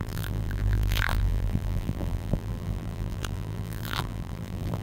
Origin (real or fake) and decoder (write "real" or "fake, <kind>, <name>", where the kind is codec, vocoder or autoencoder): fake, vocoder, BigVGAN v2